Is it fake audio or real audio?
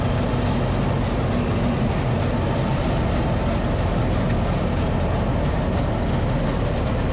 real